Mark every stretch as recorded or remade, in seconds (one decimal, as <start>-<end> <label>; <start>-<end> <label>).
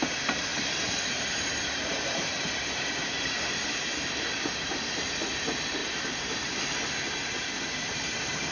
0.0-0.5 recorded; 0.5-5.2 remade; 5.2-5.8 recorded; 5.8-6.6 remade; 6.6-7.2 recorded; 7.2-8.5 remade